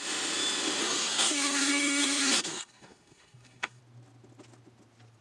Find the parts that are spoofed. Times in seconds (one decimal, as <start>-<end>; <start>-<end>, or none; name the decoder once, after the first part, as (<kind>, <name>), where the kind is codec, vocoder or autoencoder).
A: 0.8-3.8 (codec, SNAC)